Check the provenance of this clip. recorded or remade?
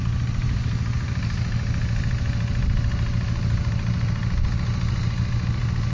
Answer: recorded